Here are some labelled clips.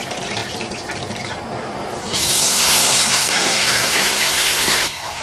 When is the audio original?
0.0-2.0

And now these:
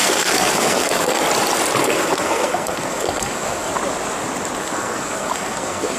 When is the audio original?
1.2-1.8; 3.7-4.6

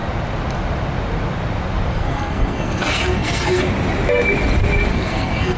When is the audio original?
0.0-1.9; 3.6-4.9

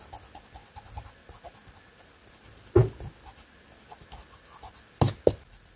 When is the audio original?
0.0-5.8

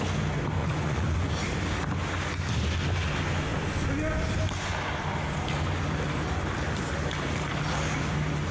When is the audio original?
0.0-0.6; 1.3-8.5

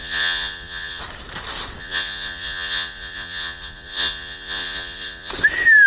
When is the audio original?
1.0-1.8; 5.3-5.9

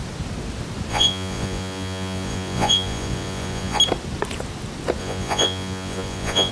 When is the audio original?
0.0-0.9; 3.8-5.0

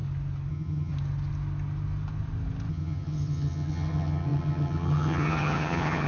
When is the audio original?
0.0-0.5; 0.9-2.7